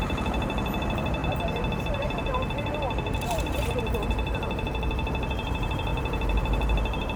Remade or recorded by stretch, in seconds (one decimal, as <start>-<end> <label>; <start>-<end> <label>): 0.0-1.2 remade; 1.2-1.8 recorded; 1.8-7.2 remade